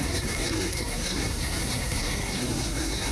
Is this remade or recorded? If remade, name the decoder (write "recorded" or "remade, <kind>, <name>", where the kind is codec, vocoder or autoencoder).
remade, codec, SNAC